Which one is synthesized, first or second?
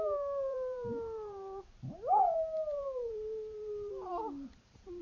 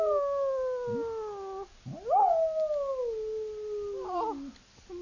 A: first